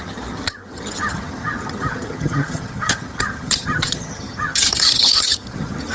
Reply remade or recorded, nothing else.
remade